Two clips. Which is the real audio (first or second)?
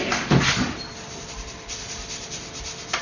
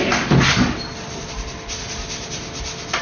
second